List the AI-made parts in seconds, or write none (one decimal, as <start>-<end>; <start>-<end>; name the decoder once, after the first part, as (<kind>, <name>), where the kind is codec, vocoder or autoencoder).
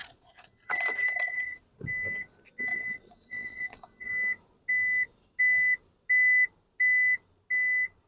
0.0-1.6 (vocoder, Vocos); 2.7-4.1